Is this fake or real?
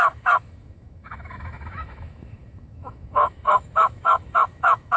fake